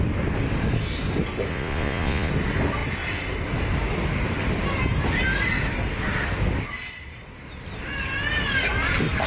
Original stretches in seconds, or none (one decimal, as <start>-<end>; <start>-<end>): 0.0-1.5; 2.3-9.3